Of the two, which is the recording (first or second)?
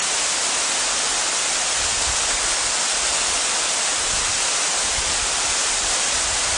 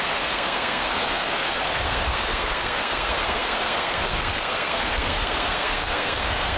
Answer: first